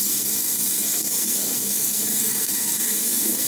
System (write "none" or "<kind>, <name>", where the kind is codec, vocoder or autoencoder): codec, SNAC